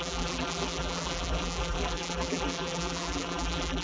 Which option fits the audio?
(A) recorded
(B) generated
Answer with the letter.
B